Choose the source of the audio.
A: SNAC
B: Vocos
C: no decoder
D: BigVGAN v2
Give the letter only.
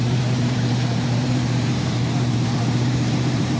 D